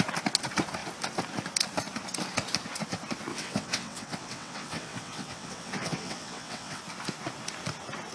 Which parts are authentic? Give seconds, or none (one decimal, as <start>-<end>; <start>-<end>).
0.0-3.3; 6.8-8.1